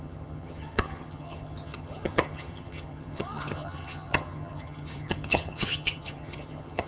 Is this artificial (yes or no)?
yes